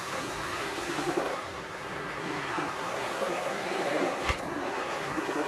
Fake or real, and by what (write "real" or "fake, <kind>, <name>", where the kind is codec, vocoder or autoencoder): fake, codec, SNAC